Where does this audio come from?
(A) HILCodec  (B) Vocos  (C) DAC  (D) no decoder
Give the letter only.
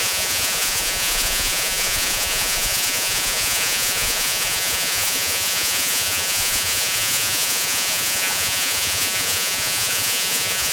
B